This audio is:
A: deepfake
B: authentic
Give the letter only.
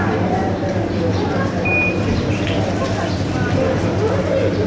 B